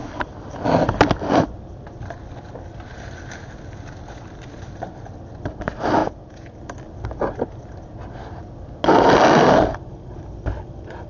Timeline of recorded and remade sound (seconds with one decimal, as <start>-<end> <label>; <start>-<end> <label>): 0.0-6.0 recorded; 6.0-6.6 remade; 6.6-11.1 recorded